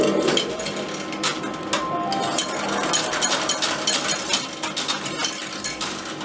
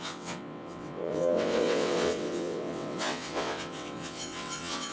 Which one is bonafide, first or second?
first